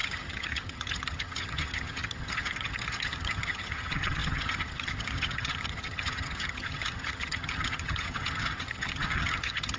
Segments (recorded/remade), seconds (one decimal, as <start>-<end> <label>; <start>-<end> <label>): 0.0-9.8 remade